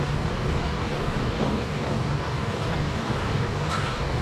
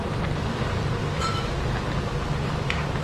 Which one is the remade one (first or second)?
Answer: first